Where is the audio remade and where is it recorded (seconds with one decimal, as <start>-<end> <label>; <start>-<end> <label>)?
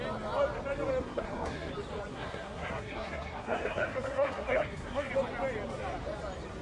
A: 0.0-1.0 recorded; 1.0-1.7 remade; 1.7-2.1 recorded; 2.1-5.1 remade; 5.1-6.6 recorded